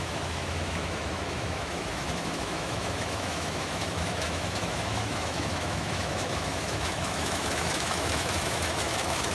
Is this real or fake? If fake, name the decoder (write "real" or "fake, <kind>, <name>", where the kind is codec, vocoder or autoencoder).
fake, autoencoder, DAC-VAE